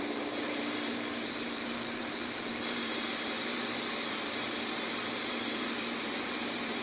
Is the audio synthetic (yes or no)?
yes